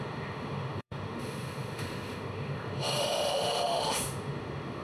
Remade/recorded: remade